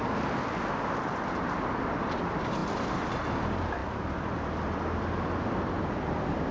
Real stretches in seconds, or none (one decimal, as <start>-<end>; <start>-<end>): 0.0-6.5